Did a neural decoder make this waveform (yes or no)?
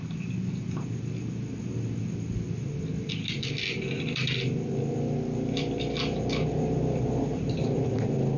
no